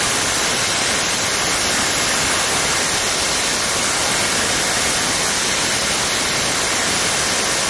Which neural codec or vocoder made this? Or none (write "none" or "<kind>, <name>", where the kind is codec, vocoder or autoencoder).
none